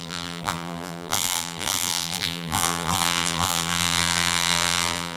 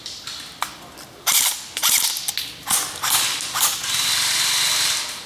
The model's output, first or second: first